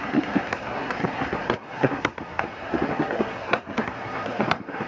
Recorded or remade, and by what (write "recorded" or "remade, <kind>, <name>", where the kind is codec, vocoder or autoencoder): remade, codec, SNAC